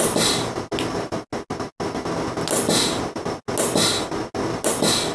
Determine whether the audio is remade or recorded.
recorded